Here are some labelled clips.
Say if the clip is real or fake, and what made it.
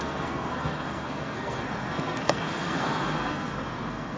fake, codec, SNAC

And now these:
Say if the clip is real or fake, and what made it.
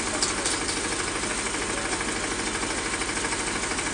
real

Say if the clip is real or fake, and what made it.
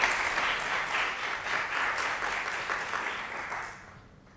real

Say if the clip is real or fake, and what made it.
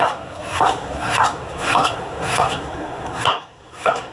fake, codec, SNAC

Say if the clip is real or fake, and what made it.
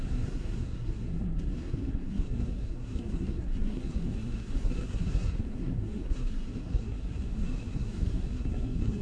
fake, codec, SNAC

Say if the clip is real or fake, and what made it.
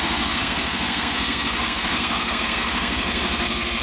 fake, codec, SNAC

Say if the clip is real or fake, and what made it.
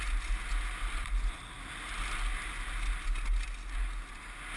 real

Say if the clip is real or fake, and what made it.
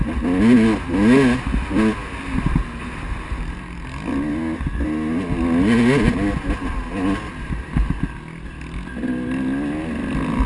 real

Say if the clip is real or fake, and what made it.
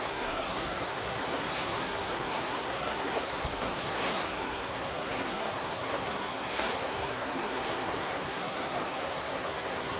fake, codec, SNAC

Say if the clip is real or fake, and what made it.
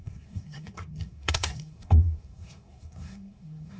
fake, codec, SNAC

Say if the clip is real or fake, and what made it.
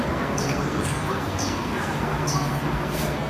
fake, codec, SNAC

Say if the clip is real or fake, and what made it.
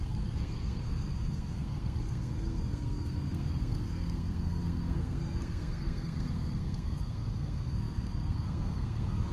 fake, codec, SNAC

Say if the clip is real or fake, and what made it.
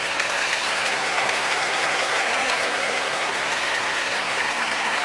fake, codec, SNAC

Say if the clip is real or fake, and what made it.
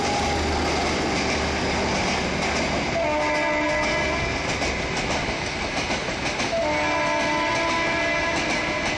real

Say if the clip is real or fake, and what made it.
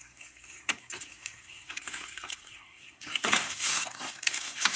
fake, codec, SNAC